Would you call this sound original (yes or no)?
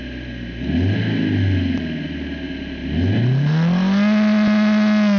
yes